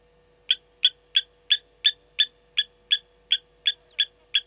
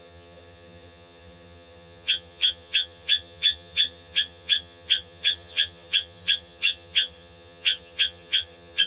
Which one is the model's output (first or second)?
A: second